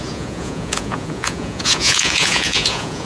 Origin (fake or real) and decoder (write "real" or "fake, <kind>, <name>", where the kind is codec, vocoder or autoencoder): fake, vocoder, Vocos